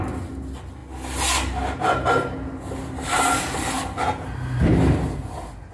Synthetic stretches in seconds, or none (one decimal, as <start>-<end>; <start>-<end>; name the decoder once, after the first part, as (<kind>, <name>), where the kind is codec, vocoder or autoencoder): none